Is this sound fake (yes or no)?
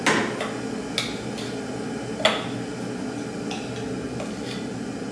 no